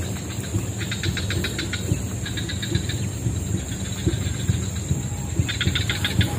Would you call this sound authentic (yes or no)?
yes